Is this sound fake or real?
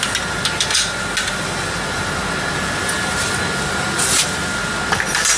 real